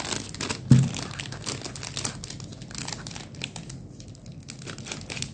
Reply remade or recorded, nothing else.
recorded